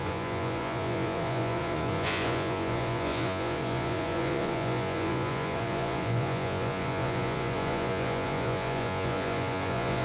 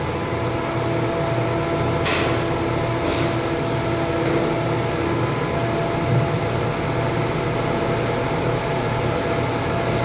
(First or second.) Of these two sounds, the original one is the second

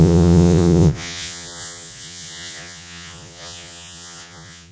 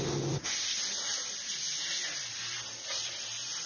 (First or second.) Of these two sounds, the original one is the second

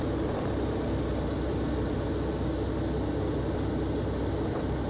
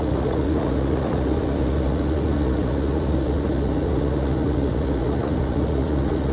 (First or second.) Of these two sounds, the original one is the first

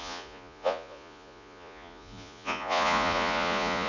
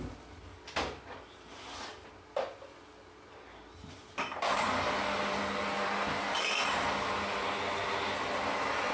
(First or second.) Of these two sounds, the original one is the second